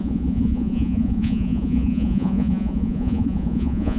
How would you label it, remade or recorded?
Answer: remade